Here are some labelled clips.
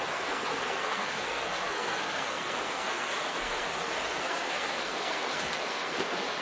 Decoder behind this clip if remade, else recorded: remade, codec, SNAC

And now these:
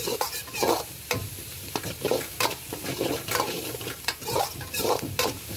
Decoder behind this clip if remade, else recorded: remade, vocoder, BigVGAN v2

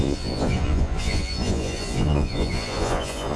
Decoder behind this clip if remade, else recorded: remade, vocoder, Vocos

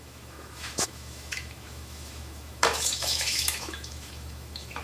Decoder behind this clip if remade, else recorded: remade, autoencoder, DAC-VAE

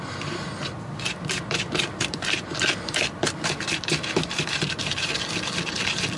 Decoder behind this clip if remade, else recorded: remade, vocoder, BigVGAN v2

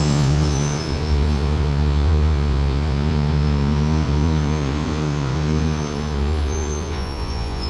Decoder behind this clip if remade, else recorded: remade, vocoder, Vocos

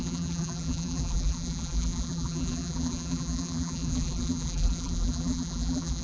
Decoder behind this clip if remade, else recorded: remade, vocoder, BigVGAN v2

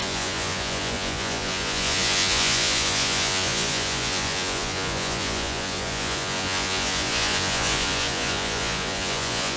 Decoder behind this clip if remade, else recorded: remade, vocoder, Vocos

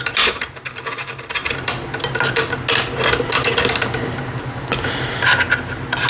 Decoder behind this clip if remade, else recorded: recorded